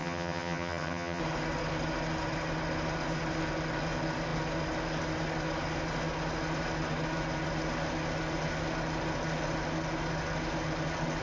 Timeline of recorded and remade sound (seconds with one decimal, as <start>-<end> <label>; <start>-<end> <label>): 0.0-1.2 remade; 1.2-11.2 recorded